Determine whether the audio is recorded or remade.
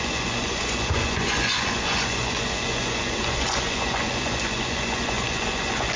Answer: remade